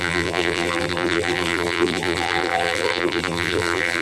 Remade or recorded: remade